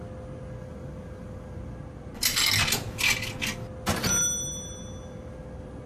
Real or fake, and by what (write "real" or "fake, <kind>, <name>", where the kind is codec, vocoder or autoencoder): real